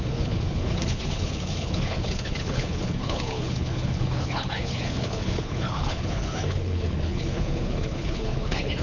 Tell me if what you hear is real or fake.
fake